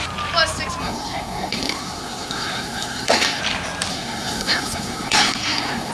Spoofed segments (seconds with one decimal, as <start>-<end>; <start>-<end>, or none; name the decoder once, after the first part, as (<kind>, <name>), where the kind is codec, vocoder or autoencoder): 0.8-3.4 (codec, SNAC); 3.9-5.9